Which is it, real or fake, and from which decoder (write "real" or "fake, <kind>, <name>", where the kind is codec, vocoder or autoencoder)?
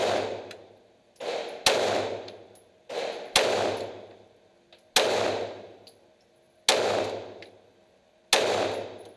real